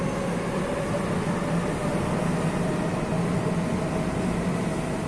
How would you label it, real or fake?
real